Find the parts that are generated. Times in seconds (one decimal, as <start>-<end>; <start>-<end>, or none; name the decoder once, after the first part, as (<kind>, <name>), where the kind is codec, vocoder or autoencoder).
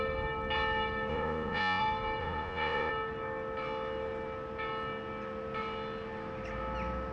1.1-1.8 (vocoder, Vocos); 2.2-2.9